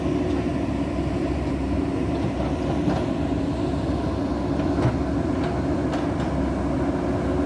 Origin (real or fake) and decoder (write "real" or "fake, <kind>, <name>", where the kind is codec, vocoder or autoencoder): real